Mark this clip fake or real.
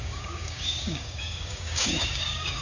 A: fake